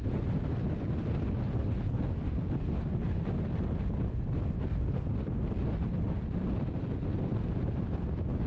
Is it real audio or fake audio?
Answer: real